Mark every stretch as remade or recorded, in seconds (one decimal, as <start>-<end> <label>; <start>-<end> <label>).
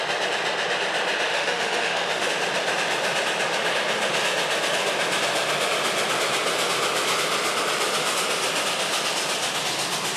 0.0-1.3 recorded; 1.3-2.3 remade; 2.3-10.2 recorded